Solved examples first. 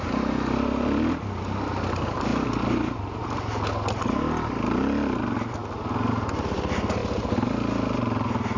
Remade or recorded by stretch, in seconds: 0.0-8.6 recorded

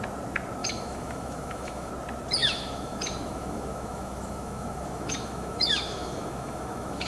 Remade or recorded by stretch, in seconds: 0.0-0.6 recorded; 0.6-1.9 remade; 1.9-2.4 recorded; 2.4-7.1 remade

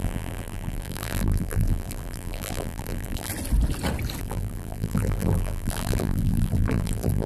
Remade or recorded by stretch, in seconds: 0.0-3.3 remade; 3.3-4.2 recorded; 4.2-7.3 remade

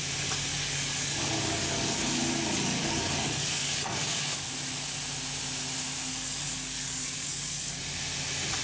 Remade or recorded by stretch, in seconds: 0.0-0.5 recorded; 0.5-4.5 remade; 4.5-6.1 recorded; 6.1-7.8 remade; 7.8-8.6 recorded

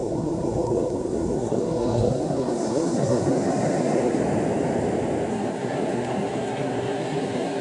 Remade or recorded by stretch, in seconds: 0.0-4.2 remade; 4.2-5.3 recorded; 5.3-7.6 remade

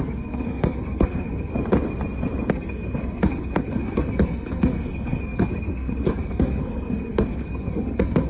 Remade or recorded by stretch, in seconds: 0.0-1.5 remade; 1.5-2.5 recorded; 2.5-8.3 remade